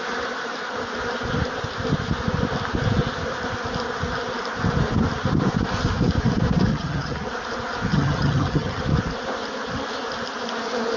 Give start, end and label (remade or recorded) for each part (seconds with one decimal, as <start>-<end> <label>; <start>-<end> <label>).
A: 0.0-6.7 recorded; 6.7-7.3 remade; 7.3-7.9 recorded; 7.9-8.8 remade; 8.8-11.0 recorded